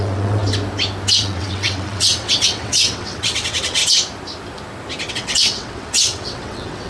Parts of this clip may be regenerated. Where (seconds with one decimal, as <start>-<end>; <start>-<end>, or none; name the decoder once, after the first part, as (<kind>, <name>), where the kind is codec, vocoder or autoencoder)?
0.0-0.4 (vocoder, WaveNeXt); 1.2-3.8; 5.1-6.9